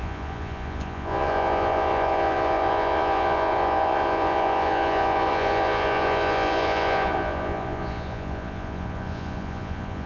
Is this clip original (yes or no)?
no